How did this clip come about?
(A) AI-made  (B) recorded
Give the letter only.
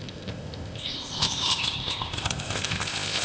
A